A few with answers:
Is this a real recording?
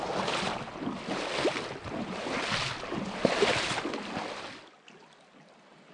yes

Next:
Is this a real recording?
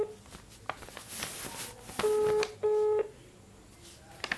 yes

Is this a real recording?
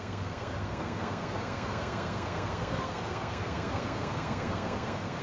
no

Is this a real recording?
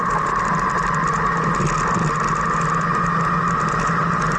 yes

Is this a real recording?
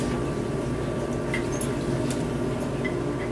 yes